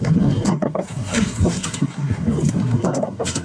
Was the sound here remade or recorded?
remade